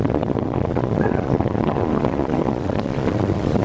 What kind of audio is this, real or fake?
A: fake